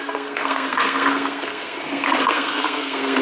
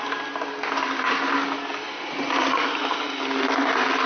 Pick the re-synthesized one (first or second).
first